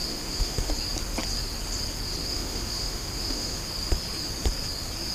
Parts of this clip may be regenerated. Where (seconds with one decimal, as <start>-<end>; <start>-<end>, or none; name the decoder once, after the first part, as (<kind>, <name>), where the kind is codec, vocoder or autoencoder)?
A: 0.0-0.7 (autoencoder, DAC-VAE); 2.2-3.7